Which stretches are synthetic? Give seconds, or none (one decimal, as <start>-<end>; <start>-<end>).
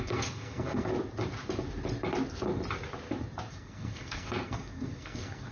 0.0-0.9; 3.5-5.5